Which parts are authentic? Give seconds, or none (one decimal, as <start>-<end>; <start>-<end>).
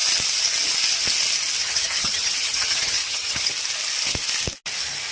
0.0-1.6; 3.5-5.1